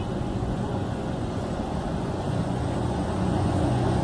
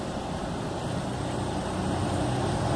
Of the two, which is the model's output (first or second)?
first